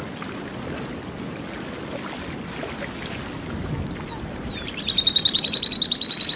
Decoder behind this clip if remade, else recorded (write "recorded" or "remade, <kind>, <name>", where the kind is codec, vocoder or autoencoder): recorded